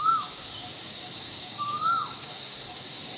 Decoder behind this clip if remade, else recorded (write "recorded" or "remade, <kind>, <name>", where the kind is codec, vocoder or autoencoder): remade, codec, DAC